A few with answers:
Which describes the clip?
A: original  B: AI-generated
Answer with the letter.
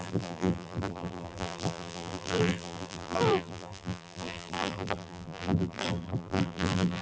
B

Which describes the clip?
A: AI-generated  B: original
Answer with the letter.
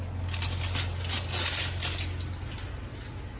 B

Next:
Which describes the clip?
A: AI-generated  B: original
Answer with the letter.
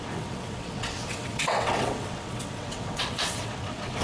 A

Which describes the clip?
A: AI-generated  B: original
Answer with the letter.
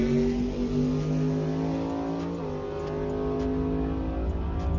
B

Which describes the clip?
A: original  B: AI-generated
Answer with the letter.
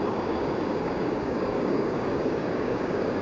B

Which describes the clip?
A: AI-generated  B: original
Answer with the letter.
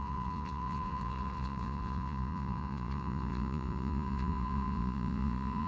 A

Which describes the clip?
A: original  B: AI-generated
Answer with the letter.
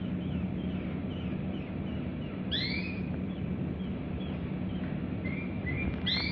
A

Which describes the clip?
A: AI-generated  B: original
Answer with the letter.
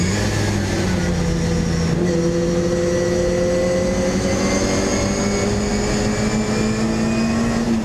B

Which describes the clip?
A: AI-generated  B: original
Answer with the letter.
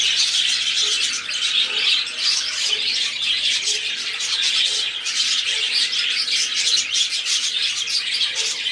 B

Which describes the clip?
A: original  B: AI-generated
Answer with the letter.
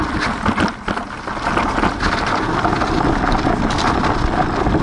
A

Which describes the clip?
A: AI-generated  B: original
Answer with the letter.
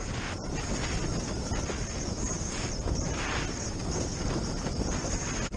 B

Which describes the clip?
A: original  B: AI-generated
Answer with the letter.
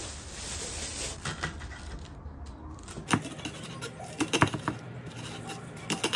A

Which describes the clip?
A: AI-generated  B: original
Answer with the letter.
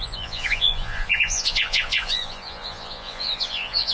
A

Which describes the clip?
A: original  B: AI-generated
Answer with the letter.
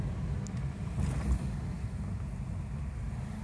A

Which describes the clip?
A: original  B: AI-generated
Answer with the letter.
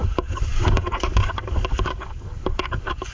B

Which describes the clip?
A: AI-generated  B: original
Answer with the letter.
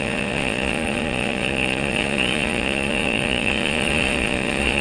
A